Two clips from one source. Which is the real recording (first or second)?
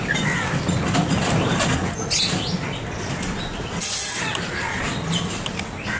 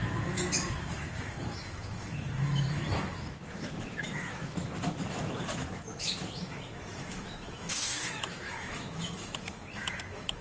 first